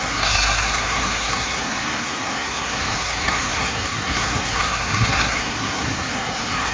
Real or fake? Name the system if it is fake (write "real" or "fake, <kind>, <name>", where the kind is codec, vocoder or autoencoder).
fake, codec, SNAC